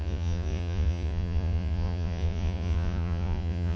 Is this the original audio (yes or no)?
no